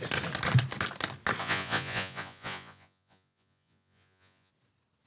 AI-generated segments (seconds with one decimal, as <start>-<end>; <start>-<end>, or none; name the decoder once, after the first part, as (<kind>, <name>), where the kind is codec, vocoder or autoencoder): 1.4-4.5 (vocoder, Vocos)